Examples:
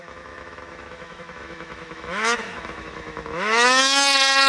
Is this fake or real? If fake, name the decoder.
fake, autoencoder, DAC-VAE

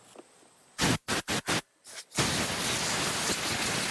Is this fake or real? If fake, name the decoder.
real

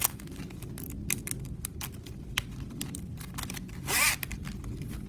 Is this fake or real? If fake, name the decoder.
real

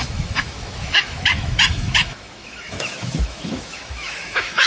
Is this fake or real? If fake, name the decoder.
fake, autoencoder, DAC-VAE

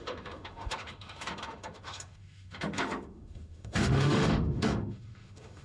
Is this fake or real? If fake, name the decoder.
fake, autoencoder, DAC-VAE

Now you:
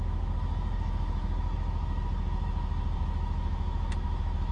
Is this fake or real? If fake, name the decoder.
fake, autoencoder, DAC-VAE